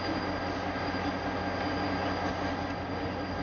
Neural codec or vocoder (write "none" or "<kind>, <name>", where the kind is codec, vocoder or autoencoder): none